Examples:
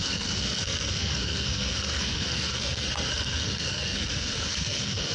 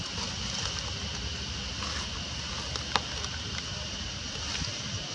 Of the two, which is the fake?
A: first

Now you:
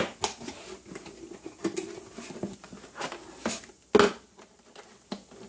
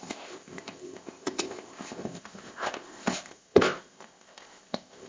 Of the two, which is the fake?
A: second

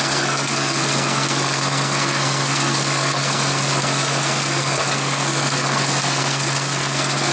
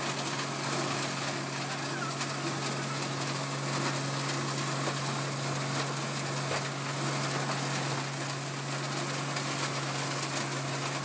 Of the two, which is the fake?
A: first